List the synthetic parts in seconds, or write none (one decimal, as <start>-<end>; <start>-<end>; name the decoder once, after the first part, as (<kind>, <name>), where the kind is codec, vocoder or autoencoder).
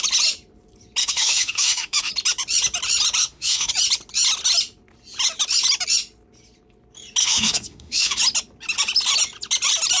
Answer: 1.0-2.1 (autoencoder, DAC-VAE); 3.2-3.7; 7.2-8.2